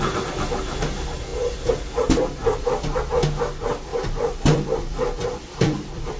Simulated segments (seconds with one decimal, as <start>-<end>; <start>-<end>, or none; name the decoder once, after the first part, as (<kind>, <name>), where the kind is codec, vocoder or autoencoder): 3.9-6.2 (vocoder, BigVGAN v2)